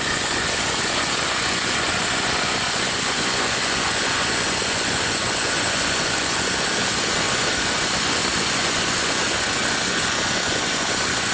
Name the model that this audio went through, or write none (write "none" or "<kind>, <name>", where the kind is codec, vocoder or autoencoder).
vocoder, Vocos